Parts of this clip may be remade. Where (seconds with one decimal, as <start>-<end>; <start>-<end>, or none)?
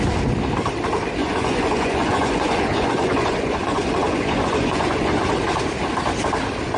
1.2-5.3